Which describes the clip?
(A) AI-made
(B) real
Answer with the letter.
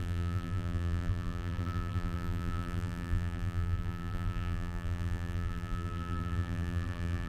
A